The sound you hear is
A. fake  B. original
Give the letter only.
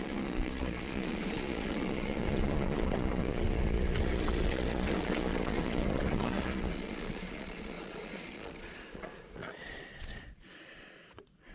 A